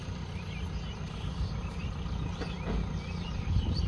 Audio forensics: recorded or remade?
recorded